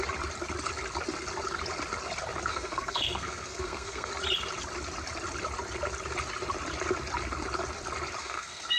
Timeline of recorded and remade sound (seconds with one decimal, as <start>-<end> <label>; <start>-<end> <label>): 0.0-2.5 recorded; 2.5-4.1 remade; 4.1-8.2 recorded; 8.2-8.8 remade

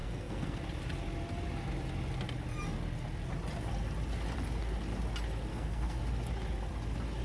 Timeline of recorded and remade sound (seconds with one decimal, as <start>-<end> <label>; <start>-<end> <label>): 0.0-0.6 remade; 0.6-5.5 recorded; 5.5-6.0 remade; 6.0-7.2 recorded

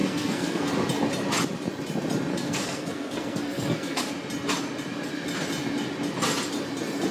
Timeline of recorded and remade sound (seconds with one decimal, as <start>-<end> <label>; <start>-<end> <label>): 0.0-0.7 remade; 0.7-2.3 recorded; 2.3-4.1 remade; 4.1-7.1 recorded

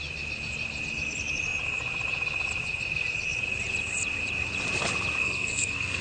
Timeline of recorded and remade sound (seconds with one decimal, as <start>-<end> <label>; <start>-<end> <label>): 0.0-5.2 recorded; 5.2-6.0 remade

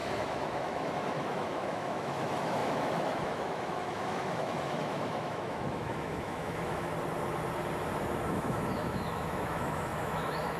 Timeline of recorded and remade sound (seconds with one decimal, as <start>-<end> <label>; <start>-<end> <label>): 0.0-6.9 remade; 6.9-8.3 recorded; 8.3-10.6 remade

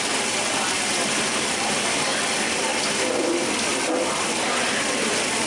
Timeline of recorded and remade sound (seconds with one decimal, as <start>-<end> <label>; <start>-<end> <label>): 0.0-0.9 recorded; 0.9-2.2 remade; 2.2-5.5 recorded

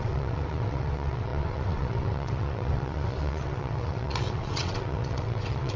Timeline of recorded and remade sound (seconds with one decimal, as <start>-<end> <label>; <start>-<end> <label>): 0.0-5.8 remade

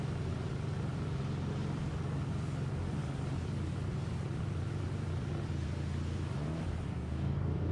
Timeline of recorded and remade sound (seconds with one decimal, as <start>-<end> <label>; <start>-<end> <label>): 0.0-6.9 recorded; 6.9-7.7 remade